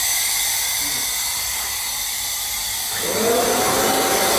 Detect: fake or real fake